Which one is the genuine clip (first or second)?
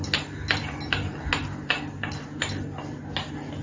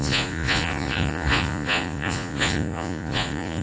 first